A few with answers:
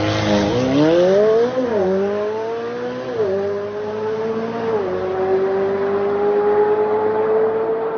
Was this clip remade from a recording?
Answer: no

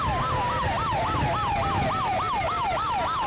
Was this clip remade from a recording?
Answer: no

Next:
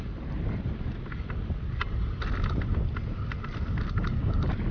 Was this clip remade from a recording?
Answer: no